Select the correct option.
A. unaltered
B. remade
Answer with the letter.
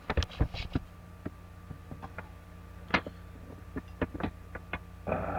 A